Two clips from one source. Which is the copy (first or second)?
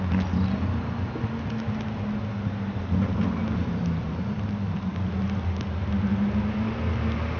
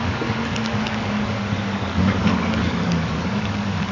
second